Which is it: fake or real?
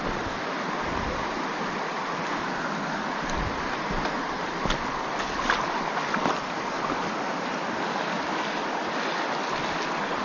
real